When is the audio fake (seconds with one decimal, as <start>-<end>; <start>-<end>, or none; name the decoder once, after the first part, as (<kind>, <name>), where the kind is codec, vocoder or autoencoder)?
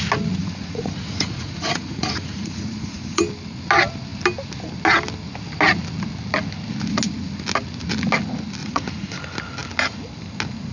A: 0.4-3.2 (vocoder, Vocos); 8.6-9.2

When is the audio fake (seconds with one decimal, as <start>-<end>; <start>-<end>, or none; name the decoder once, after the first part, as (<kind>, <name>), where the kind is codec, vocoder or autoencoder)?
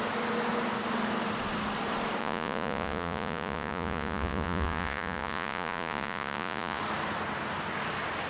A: 2.2-6.8 (vocoder, Vocos)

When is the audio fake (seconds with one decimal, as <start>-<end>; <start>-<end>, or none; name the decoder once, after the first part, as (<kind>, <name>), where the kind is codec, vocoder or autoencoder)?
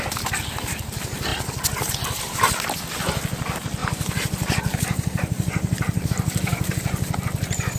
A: 1.3-1.9 (vocoder, BigVGAN v2); 3.8-6.1; 6.5-7.2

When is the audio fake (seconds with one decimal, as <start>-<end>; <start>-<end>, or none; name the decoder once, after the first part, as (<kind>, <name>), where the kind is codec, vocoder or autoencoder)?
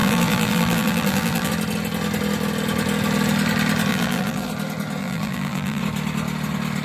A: 0.0-1.5 (vocoder, BigVGAN v2); 3.9-4.5; 5.0-5.8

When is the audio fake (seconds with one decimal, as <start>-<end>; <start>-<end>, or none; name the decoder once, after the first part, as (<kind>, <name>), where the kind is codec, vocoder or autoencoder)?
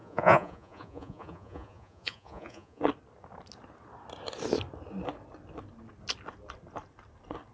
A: 0.0-2.8 (vocoder, Vocos)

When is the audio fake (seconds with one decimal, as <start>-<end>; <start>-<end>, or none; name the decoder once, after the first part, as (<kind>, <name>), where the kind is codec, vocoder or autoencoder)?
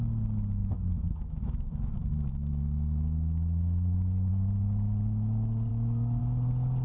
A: 0.6-4.3 (autoencoder, DAC-VAE); 5.7-6.2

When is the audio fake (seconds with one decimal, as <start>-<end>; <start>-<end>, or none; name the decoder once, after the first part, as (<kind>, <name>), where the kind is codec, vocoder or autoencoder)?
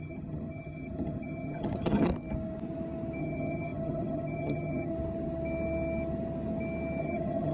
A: 0.0-2.1 (vocoder, HiFi-GAN); 3.2-4.9; 7.0-7.5